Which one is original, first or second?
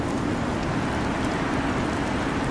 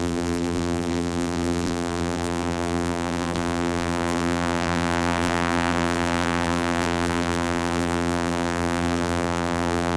first